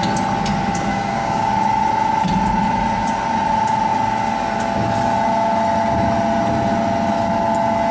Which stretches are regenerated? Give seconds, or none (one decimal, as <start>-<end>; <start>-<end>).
0.9-1.5